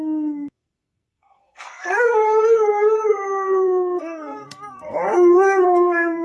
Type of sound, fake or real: fake